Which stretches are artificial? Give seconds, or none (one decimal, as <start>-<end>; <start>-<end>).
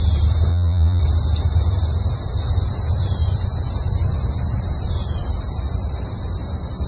0.5-1.0